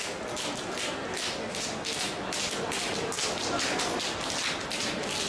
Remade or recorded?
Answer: recorded